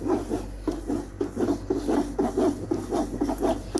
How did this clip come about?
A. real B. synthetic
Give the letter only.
A